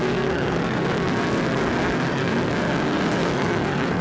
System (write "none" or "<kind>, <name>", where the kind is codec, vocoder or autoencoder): codec, SNAC